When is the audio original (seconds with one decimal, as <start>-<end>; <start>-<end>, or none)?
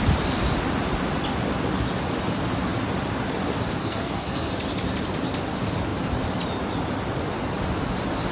0.0-3.8; 4.5-8.3